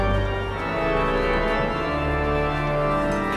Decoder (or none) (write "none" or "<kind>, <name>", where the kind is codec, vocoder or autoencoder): none